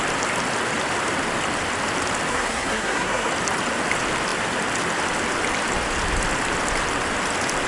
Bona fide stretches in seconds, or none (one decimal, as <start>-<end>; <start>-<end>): 0.0-2.3; 3.3-7.7